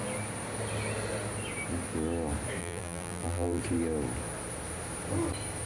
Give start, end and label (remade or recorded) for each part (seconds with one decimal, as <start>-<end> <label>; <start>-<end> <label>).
0.0-2.6 recorded; 2.6-3.6 remade; 3.6-5.7 recorded

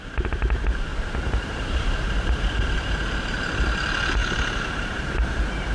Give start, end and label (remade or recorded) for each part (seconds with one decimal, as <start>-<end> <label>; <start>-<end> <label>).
0.0-0.9 recorded; 0.9-3.4 remade; 3.4-4.2 recorded; 4.2-5.1 remade; 5.1-5.7 recorded